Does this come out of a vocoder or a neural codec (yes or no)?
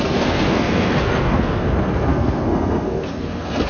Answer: yes